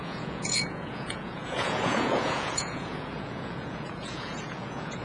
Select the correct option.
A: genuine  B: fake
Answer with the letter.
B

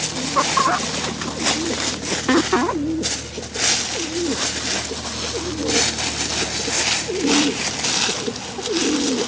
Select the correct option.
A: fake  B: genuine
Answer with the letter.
B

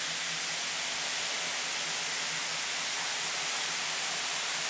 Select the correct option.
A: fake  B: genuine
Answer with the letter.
B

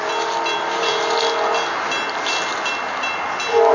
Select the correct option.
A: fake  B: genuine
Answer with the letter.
B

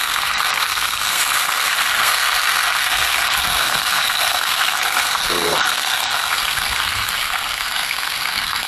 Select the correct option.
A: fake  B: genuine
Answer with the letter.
A